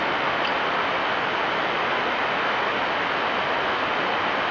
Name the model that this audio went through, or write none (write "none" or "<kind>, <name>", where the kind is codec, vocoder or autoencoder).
none